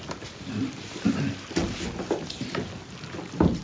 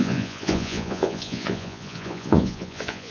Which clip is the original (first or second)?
first